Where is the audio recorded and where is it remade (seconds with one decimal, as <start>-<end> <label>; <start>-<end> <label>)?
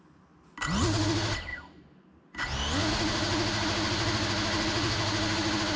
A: 0.0-5.8 recorded